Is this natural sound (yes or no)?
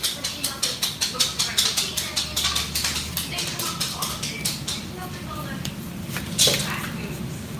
yes